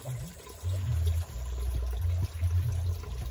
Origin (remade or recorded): recorded